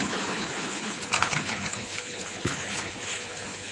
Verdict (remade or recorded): remade